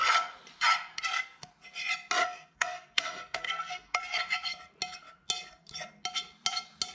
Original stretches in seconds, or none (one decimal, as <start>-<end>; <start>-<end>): 0.0-0.9; 1.5-2.2; 4.2-6.9